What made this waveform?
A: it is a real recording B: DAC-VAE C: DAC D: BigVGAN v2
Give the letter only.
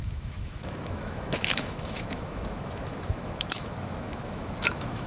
B